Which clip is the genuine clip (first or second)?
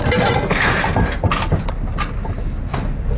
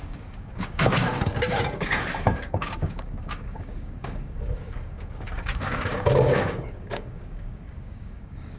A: first